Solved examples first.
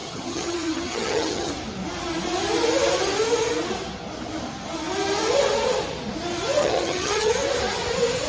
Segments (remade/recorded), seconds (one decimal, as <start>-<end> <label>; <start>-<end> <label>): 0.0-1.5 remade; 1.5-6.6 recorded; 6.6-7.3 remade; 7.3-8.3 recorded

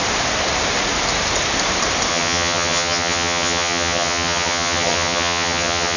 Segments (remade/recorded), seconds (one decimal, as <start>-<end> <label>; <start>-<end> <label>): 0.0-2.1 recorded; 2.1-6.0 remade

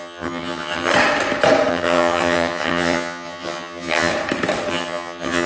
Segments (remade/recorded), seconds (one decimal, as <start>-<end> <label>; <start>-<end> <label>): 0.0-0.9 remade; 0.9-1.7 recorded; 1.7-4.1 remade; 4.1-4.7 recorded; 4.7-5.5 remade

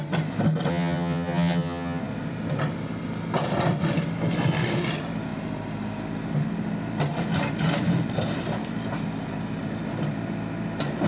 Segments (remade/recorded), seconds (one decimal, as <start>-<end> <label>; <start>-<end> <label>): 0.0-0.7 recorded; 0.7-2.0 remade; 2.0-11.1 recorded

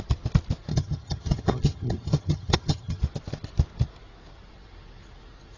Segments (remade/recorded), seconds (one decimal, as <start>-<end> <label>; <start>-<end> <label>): 0.0-0.7 recorded; 0.7-3.0 remade; 3.0-5.6 recorded